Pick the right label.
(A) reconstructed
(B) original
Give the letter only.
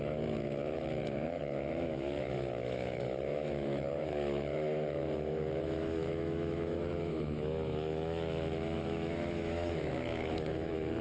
A